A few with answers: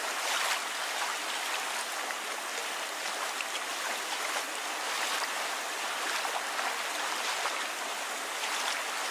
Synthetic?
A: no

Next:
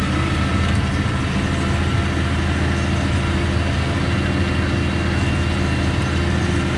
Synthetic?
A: no